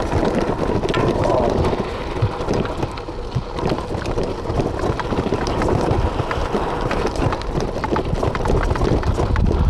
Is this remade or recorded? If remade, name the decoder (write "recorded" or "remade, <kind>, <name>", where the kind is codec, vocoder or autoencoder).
recorded